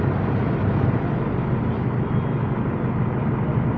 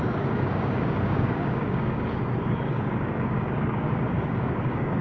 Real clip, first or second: first